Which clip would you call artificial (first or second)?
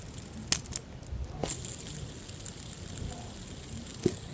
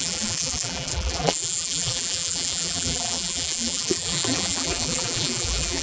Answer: second